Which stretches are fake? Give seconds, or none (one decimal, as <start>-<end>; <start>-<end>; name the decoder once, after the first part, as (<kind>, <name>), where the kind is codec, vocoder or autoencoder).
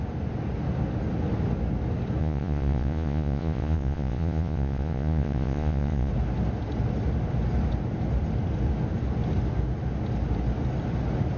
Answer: 2.2-6.1 (vocoder, Vocos)